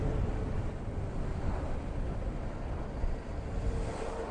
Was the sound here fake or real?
real